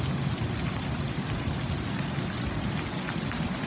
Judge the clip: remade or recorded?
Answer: recorded